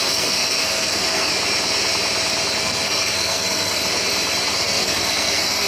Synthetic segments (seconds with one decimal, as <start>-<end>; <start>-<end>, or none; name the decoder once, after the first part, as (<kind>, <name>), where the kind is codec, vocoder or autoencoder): 0.0-1.3 (codec, SNAC); 2.6-3.8; 4.5-5.7

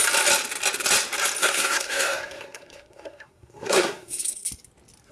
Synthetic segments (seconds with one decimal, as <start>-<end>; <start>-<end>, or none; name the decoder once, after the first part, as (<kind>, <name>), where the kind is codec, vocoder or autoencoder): 1.4-4.5 (codec, SNAC)

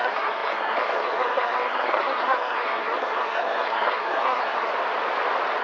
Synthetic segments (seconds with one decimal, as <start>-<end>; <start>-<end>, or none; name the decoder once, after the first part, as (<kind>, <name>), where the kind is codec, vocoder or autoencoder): 0.0-4.7 (codec, SNAC)

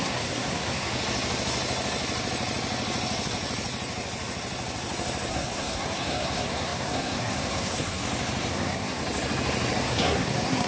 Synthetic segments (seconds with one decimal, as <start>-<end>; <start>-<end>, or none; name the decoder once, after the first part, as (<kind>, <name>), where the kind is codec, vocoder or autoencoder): 0.0-0.9 (codec, SNAC); 5.3-8.0; 8.5-9.0; 9.8-10.7